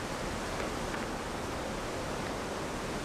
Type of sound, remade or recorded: recorded